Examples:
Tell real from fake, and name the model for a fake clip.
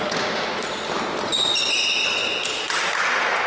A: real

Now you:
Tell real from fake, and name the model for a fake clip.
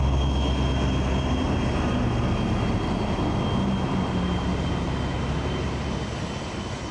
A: real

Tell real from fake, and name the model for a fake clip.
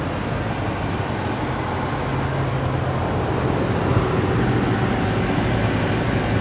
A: real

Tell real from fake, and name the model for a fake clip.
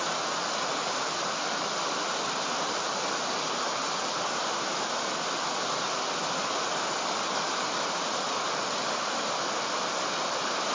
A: real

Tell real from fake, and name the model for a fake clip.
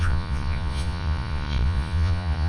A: fake, vocoder, Vocos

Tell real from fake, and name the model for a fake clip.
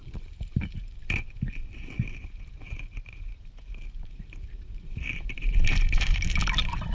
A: fake, vocoder, BigVGAN v2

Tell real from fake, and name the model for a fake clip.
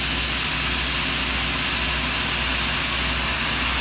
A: real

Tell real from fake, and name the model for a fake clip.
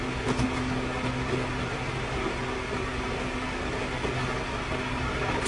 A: real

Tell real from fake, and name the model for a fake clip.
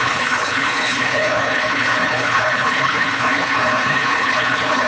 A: fake, codec, HILCodec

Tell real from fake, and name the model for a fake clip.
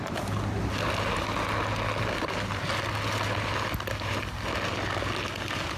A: real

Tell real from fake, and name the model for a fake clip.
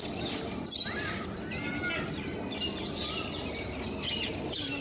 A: real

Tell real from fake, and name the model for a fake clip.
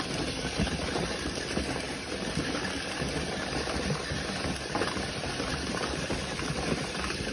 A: real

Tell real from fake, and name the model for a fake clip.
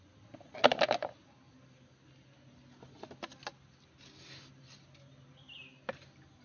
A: real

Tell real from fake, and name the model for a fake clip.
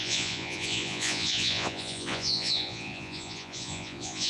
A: fake, vocoder, Vocos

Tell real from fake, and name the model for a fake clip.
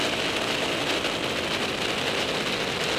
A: real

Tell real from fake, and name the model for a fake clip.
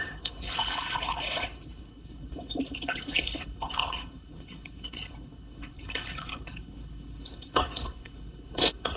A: fake, codec, HILCodec